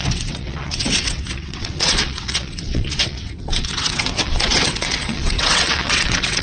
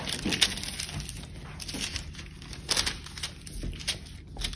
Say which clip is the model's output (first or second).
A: first